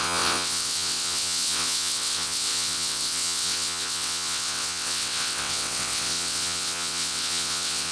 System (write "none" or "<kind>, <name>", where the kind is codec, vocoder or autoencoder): vocoder, WaveNeXt